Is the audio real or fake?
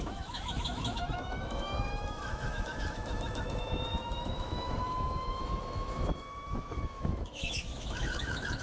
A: fake